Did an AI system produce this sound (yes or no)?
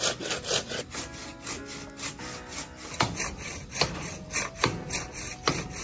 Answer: no